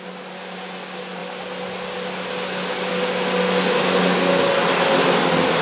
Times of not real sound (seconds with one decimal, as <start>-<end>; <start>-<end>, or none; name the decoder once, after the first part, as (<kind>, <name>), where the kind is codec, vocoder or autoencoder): none

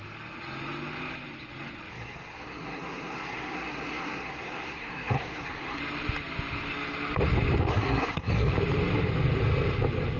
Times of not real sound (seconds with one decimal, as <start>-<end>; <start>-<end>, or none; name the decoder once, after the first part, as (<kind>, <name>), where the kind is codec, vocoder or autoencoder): 1.9-5.8 (codec, SNAC); 7.7-8.5

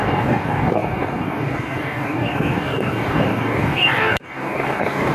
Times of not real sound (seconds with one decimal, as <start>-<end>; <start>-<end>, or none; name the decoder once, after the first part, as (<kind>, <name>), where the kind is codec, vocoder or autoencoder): 0.0-5.1 (codec, DAC)

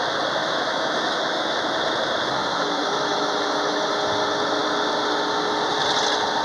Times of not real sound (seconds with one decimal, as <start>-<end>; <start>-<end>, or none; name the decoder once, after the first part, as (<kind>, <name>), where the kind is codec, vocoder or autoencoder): 0.4-1.6 (autoencoder, DAC-VAE); 2.5-3.9

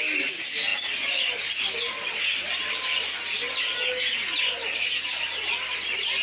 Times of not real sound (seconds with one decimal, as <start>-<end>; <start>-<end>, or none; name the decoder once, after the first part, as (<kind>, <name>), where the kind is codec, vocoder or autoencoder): none

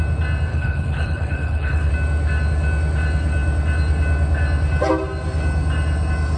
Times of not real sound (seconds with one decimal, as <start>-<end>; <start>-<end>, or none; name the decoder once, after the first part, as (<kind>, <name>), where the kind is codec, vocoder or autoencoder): 0.5-1.9 (codec, HILCodec)

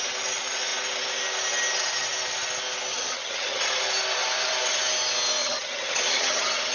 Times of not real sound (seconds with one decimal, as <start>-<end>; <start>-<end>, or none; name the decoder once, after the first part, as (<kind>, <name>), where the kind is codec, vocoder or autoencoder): 2.9-3.6 (vocoder, HiFi-GAN); 5.4-6.7